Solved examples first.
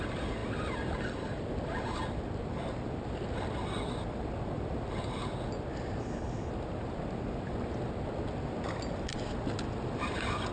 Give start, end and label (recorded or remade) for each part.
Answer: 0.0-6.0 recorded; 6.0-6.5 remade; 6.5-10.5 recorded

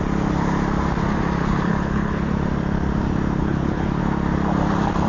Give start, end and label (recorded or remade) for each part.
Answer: 0.0-1.4 recorded; 1.4-2.3 remade; 2.3-3.4 recorded; 3.4-4.0 remade; 4.0-5.1 recorded

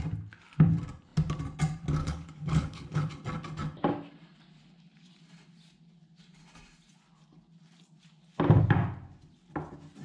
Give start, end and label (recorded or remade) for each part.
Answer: 0.0-2.0 recorded; 2.0-3.1 remade; 3.1-10.0 recorded

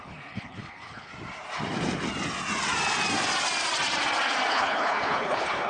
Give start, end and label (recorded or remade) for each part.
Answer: 0.0-1.1 remade; 1.1-4.5 recorded; 4.5-5.7 remade

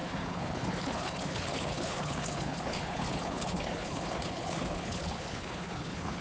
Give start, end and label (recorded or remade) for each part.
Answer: 0.0-6.2 remade

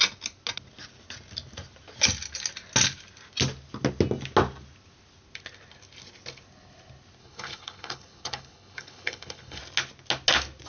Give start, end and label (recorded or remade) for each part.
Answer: 0.0-7.2 recorded; 7.2-9.6 remade; 9.6-10.7 recorded